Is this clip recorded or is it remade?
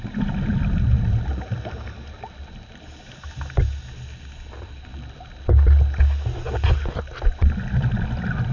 recorded